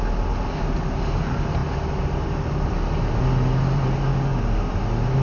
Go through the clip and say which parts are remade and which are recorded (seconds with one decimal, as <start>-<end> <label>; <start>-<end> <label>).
0.0-5.2 recorded